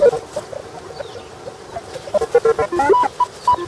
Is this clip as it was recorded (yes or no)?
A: yes